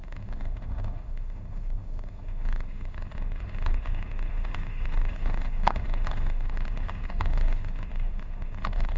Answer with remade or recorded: remade